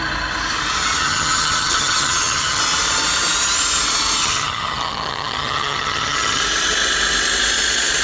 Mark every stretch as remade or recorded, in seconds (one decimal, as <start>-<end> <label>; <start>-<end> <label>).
0.0-1.0 recorded; 1.0-2.6 remade; 2.6-4.2 recorded; 4.2-6.4 remade; 6.4-8.0 recorded